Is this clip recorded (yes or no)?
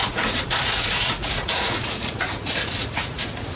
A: no